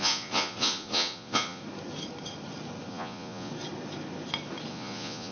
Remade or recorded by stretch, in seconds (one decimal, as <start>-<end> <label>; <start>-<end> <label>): 0.0-1.6 remade; 1.6-2.9 recorded; 2.9-3.5 remade; 3.5-4.7 recorded; 4.7-5.3 remade